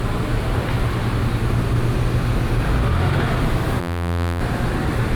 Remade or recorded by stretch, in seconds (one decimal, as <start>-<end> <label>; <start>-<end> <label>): 0.0-3.8 recorded; 3.8-4.4 remade; 4.4-5.1 recorded